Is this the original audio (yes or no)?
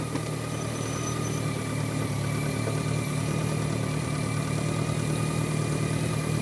yes